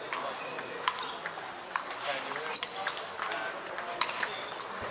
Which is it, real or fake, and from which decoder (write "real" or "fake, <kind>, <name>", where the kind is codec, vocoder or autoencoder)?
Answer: real